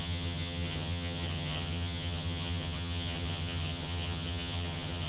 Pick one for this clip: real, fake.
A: fake